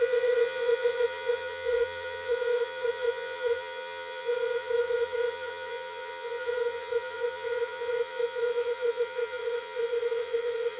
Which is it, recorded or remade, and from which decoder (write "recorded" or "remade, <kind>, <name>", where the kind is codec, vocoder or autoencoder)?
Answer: remade, vocoder, Vocos